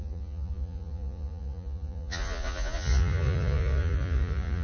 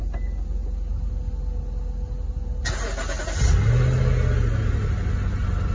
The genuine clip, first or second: second